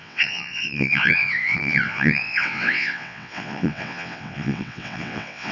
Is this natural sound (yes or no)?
no